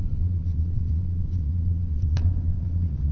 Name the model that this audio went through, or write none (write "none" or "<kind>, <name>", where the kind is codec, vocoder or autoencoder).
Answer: vocoder, Vocos